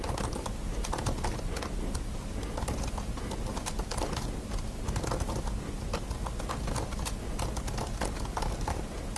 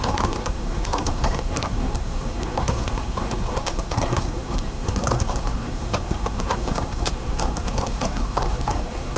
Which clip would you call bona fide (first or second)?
first